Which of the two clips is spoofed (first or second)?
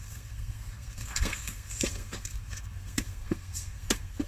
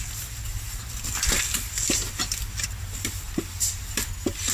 first